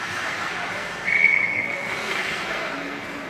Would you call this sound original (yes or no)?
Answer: no